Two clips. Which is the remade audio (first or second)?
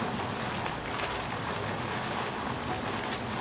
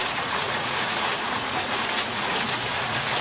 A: second